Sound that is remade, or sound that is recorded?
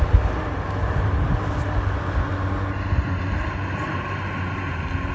recorded